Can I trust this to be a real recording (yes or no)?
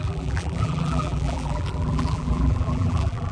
no